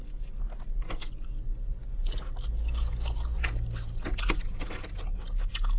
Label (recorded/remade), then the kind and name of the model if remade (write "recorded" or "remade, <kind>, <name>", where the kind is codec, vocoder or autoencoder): recorded